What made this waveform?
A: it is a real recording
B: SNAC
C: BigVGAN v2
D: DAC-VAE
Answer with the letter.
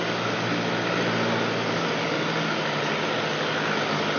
A